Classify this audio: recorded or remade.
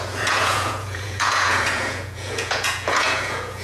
remade